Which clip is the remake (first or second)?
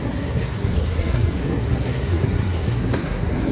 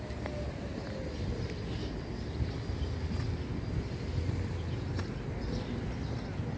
first